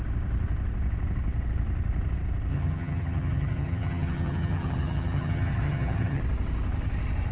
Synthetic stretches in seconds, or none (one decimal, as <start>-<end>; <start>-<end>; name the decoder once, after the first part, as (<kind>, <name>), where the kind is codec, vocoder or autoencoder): 2.5-6.2 (vocoder, HiFi-GAN)